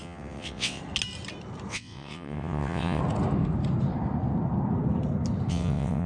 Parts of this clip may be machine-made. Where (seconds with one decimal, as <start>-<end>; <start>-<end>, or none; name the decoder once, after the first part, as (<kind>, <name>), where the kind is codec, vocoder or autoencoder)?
0.0-0.8 (vocoder, WaveNeXt); 1.7-3.0; 5.5-6.1